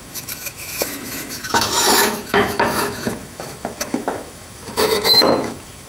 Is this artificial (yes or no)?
yes